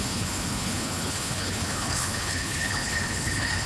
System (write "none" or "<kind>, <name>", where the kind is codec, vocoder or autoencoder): codec, HILCodec